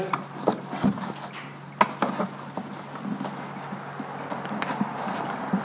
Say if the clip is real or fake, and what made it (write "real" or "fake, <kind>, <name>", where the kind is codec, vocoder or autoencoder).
real